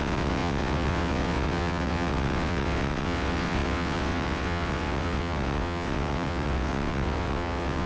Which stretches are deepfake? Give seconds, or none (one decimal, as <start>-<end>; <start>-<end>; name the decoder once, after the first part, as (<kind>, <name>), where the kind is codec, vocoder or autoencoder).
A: 0.0-7.9 (vocoder, WaveNeXt)